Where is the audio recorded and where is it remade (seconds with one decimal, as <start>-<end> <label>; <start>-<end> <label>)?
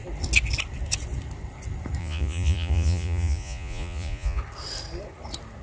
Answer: 0.0-2.0 recorded; 2.0-4.4 remade; 4.4-5.6 recorded